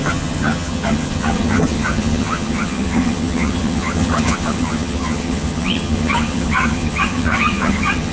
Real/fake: fake